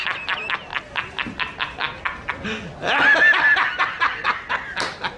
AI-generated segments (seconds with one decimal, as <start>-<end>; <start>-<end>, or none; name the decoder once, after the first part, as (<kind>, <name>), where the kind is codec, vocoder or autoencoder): none